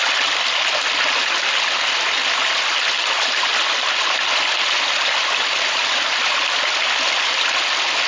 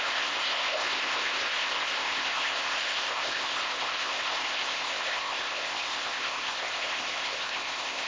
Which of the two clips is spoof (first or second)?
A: second